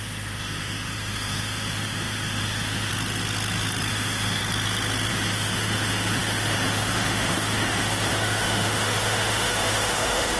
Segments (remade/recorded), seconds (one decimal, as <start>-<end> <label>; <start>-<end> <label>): 0.0-2.9 remade; 2.9-3.9 recorded; 3.9-4.4 remade; 4.4-5.1 recorded; 5.1-10.4 remade